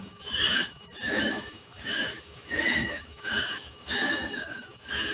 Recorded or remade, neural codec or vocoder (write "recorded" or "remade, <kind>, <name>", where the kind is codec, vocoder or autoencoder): remade, autoencoder, DAC-VAE